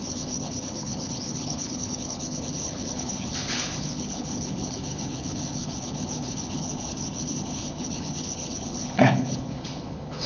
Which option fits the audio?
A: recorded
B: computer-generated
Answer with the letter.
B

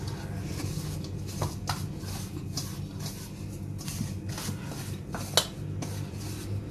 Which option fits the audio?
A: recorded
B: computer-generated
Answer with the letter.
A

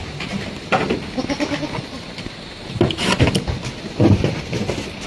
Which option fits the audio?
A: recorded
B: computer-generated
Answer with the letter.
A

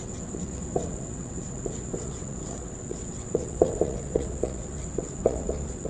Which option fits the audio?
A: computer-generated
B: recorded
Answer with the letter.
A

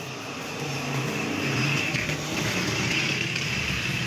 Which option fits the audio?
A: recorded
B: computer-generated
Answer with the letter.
B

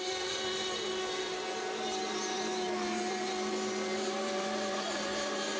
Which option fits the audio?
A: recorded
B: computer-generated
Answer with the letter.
A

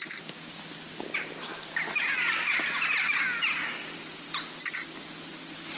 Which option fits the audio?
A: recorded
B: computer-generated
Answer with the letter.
A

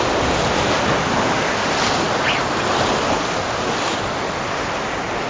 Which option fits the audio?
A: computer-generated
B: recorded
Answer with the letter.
B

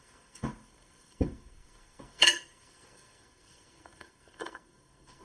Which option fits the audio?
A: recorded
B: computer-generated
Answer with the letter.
B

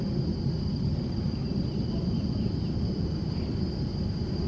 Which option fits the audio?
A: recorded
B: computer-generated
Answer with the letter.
A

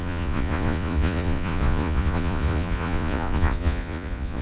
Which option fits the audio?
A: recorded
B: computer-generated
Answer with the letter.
B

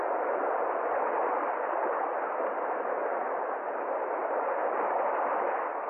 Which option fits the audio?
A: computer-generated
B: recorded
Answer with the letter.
B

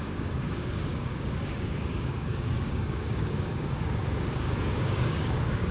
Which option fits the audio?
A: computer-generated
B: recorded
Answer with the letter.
A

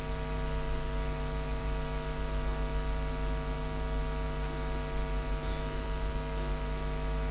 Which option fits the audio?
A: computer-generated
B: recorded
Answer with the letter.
B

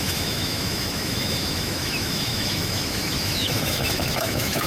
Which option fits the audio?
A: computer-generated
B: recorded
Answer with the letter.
A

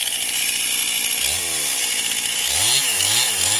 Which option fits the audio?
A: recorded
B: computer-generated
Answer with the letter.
A